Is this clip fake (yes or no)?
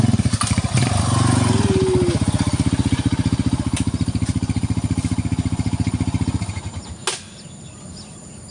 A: no